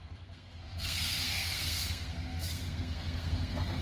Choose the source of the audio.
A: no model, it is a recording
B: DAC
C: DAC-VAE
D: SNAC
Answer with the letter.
D